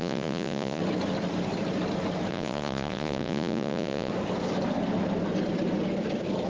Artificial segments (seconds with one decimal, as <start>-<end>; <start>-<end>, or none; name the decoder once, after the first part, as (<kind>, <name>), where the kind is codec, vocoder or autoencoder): 0.0-0.8 (vocoder, Vocos); 2.3-4.1